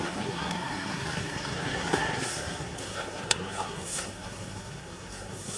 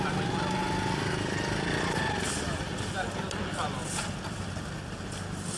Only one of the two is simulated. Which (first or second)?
first